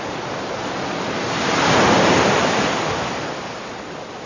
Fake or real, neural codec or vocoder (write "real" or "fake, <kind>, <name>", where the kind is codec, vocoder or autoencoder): real